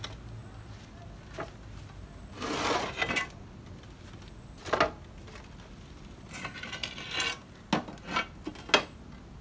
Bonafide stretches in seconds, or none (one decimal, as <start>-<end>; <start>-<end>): 0.0-9.4